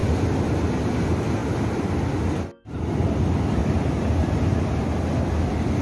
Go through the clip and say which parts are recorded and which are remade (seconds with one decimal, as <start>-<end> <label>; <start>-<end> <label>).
0.0-5.8 recorded